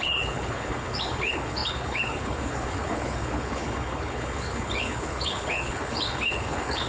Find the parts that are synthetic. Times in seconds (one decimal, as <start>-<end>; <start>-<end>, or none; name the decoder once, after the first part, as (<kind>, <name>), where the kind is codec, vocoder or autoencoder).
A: 0.0-6.9 (codec, HILCodec)